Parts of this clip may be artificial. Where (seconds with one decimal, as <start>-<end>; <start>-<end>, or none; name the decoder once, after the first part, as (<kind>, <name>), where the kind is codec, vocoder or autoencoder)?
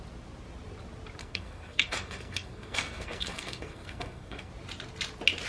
1.2-4.5 (codec, SNAC)